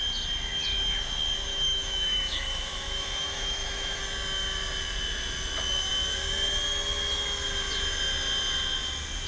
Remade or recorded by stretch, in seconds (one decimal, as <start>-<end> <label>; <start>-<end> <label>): 0.0-1.5 recorded; 1.5-4.0 remade; 4.0-9.3 recorded